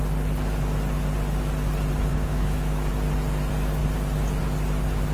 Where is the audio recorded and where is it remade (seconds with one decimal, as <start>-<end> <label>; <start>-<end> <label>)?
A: 0.0-2.1 recorded; 2.1-2.9 remade; 2.9-5.1 recorded